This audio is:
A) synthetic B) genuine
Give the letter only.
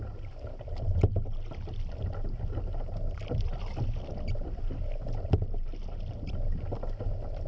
B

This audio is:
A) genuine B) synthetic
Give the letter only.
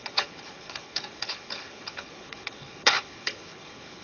B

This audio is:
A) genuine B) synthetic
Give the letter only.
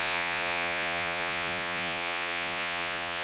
B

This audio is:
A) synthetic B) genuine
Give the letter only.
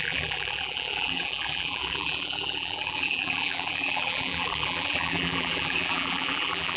A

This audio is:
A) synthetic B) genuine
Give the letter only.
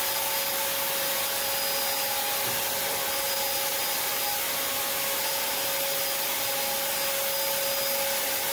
B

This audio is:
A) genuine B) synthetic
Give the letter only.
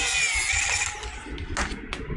A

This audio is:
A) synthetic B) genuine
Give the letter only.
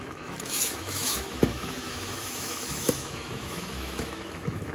A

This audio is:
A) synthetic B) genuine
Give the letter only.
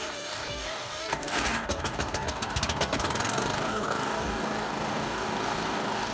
A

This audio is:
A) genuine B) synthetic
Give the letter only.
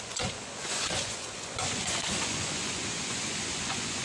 B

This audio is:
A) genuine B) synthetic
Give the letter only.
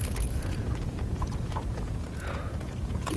B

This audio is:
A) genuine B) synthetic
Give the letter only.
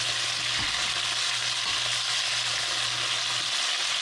A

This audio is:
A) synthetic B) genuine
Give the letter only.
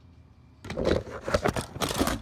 B